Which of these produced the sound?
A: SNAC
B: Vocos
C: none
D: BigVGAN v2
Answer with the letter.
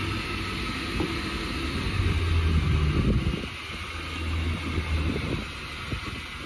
C